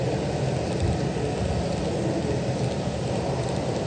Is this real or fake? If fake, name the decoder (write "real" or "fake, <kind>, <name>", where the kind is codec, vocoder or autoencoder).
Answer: real